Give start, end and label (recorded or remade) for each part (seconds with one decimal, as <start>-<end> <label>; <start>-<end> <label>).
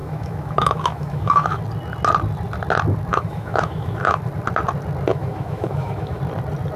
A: 0.0-1.6 remade; 1.6-3.1 recorded; 3.1-4.2 remade; 4.2-5.1 recorded; 5.1-6.2 remade; 6.2-6.8 recorded